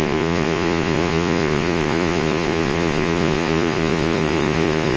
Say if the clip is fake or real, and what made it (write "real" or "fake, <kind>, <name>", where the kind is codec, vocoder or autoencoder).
fake, vocoder, Vocos